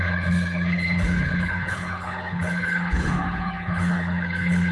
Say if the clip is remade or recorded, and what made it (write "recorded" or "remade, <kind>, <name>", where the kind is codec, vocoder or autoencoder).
remade, codec, HILCodec